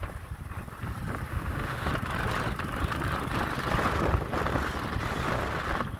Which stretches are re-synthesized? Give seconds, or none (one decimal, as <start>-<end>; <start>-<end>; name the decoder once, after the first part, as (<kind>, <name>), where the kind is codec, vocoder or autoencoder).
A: 1.3-1.9 (autoencoder, DAC-VAE)